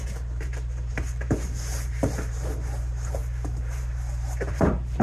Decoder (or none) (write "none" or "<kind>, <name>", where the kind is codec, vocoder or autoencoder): vocoder, BigVGAN v2